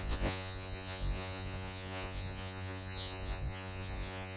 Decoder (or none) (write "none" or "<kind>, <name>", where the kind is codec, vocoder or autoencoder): vocoder, Vocos